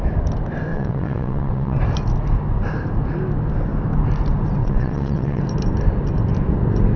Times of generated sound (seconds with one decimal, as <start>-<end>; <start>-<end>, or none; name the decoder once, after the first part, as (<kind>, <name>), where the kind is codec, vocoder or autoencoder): 0.7-1.8 (vocoder, WaveNeXt); 4.6-5.4